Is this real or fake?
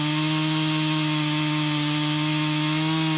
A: real